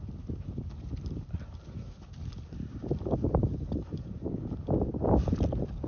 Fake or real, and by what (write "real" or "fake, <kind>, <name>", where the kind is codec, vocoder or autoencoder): real